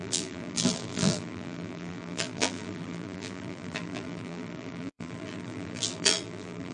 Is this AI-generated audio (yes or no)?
yes